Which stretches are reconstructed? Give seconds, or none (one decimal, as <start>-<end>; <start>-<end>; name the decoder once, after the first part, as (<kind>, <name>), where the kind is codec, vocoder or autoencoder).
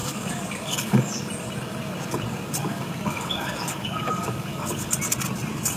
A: 0.0-1.2 (codec, DAC); 2.6-4.9